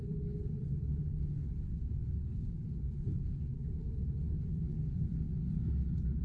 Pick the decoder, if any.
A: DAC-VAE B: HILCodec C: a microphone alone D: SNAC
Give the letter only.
B